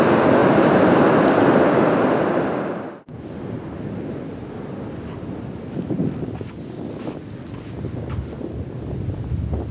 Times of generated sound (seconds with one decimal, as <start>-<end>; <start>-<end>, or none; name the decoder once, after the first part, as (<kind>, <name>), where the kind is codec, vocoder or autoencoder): none